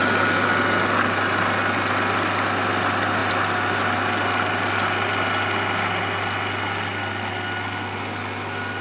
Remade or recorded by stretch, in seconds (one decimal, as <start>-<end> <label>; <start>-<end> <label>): 0.0-8.8 recorded